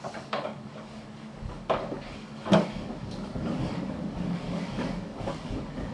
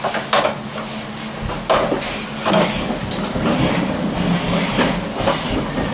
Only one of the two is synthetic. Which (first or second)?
first